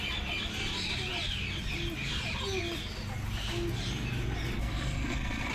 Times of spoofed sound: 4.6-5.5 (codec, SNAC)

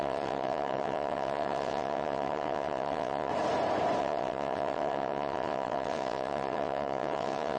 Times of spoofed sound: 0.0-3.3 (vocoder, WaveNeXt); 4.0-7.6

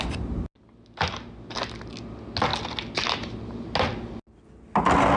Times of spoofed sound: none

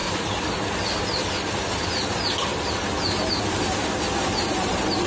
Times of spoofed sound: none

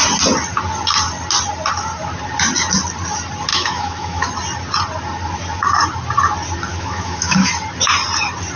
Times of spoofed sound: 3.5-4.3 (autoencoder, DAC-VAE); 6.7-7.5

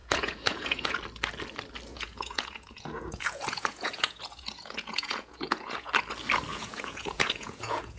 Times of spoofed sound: 0.0-1.0 (vocoder, Vocos); 1.9-5.9; 6.5-8.0

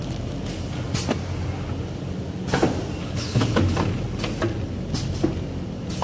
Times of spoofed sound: 3.0-3.6 (codec, HILCodec)